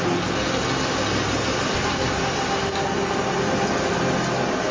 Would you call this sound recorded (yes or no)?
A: yes